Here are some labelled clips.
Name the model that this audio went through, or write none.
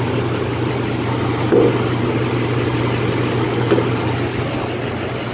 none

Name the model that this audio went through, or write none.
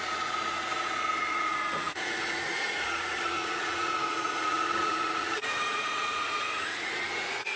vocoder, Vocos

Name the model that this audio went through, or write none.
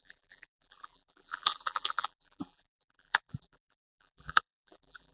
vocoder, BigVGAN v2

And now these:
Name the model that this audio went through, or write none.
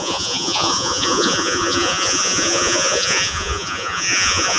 vocoder, Vocos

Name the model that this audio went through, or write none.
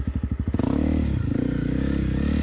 none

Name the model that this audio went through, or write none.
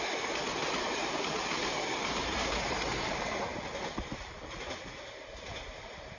none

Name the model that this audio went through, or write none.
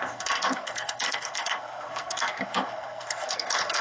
codec, SNAC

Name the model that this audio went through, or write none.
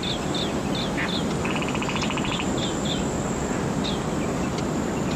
none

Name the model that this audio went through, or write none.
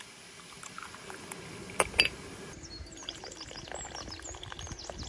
none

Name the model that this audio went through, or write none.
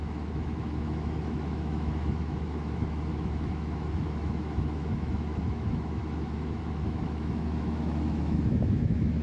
autoencoder, DAC-VAE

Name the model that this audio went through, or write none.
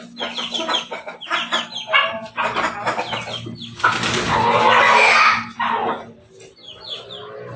none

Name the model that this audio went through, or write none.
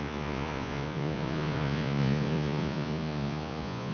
vocoder, Vocos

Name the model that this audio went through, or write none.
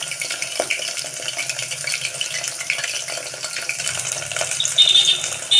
none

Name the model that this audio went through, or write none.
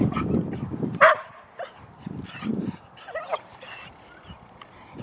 vocoder, BigVGAN v2